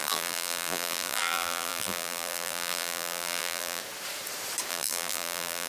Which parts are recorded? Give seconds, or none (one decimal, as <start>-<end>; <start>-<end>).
3.8-4.7